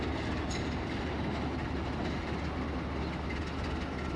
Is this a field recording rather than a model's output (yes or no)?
yes